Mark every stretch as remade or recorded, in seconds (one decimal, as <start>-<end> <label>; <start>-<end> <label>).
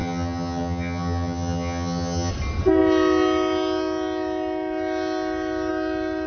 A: 0.0-2.3 remade; 2.3-6.3 recorded